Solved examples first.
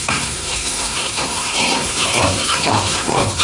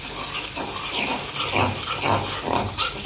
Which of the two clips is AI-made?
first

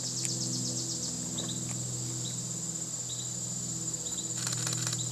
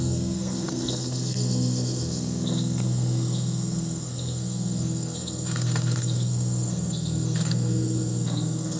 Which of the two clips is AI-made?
second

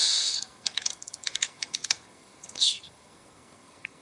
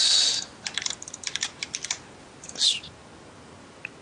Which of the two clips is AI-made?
first